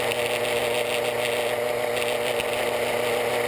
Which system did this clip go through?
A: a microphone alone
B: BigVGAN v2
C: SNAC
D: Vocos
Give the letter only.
A